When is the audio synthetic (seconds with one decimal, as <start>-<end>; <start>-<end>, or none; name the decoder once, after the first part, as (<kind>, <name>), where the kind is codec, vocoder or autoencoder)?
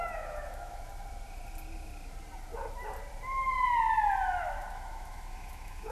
0.0-0.9 (autoencoder, DAC-VAE); 4.4-5.9